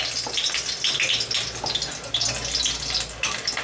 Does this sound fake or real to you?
real